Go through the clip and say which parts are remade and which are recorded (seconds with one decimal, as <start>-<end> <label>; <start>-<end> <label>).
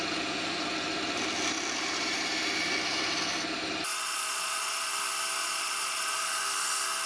0.0-3.9 recorded; 3.9-4.9 remade; 4.9-5.4 recorded; 5.4-6.4 remade; 6.4-7.1 recorded